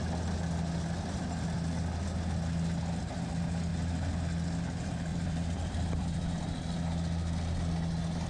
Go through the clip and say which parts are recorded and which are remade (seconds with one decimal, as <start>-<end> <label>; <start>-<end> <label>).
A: 0.0-5.1 recorded; 5.1-6.4 remade; 6.4-8.3 recorded